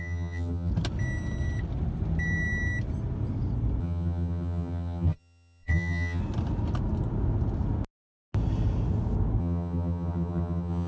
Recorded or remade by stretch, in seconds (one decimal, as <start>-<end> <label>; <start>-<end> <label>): 0.0-0.7 remade; 0.7-3.8 recorded; 3.8-6.2 remade; 6.2-9.4 recorded; 9.4-10.9 remade